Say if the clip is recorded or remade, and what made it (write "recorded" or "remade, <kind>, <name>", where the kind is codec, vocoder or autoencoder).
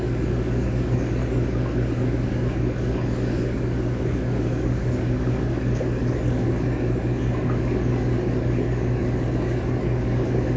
remade, codec, DAC